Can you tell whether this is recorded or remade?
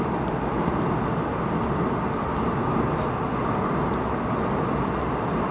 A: recorded